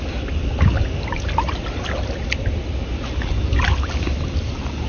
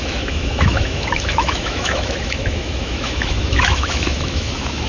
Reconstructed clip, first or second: second